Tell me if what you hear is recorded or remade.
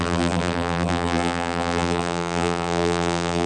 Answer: remade